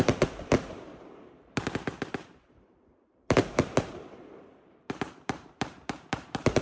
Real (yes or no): no